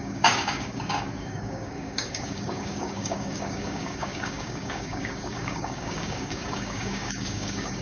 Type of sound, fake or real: fake